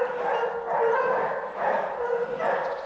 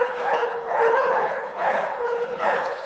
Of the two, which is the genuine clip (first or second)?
first